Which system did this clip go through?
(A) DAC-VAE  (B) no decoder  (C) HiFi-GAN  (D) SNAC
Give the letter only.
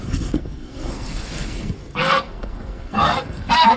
D